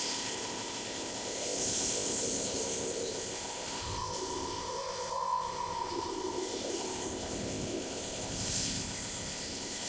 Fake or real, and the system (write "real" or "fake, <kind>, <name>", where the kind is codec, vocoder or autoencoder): fake, codec, ZipCodec